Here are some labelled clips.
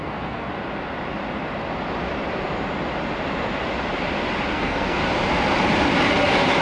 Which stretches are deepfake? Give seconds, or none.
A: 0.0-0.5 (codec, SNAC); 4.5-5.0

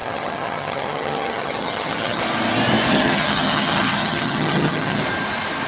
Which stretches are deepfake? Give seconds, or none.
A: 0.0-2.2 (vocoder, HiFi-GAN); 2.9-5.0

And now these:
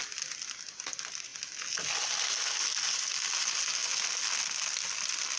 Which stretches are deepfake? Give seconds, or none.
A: none